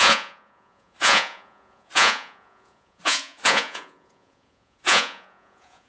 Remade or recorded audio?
remade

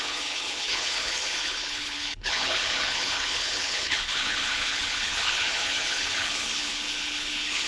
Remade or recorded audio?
remade